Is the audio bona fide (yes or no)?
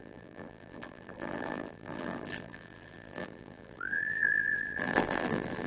no